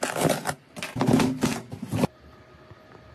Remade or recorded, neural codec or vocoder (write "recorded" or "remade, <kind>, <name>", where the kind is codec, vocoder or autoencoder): recorded